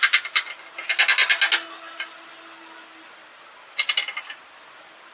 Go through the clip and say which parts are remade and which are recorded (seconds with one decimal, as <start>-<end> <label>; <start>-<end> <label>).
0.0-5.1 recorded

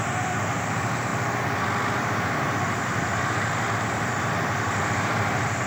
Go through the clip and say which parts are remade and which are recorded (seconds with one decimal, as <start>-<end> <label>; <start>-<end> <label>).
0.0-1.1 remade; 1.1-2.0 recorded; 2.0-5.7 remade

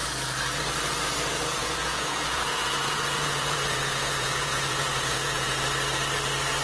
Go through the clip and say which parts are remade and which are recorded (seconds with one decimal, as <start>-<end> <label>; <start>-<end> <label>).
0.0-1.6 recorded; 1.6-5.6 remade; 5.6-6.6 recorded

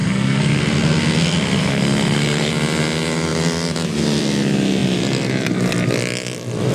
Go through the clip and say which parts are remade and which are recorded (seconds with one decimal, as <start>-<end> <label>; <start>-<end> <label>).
0.0-0.6 remade; 0.6-1.6 recorded; 1.6-2.5 remade; 2.5-6.7 recorded

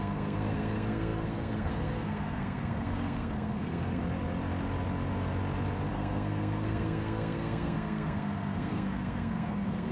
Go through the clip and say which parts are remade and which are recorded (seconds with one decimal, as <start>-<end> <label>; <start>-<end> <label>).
0.0-4.0 remade; 4.0-5.9 recorded; 5.9-9.9 remade

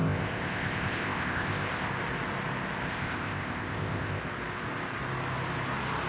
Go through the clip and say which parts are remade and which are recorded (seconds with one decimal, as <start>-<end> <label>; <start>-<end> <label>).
0.0-1.9 remade; 1.9-2.9 recorded; 2.9-4.2 remade; 4.2-6.1 recorded